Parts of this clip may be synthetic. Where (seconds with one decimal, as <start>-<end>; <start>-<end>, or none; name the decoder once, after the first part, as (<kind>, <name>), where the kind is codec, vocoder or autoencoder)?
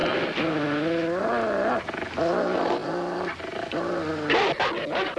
none